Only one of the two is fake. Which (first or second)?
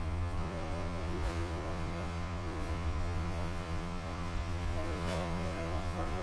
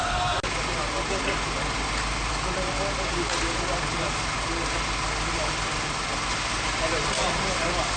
first